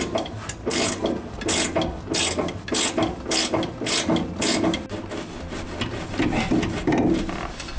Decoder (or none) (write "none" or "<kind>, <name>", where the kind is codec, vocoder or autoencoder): none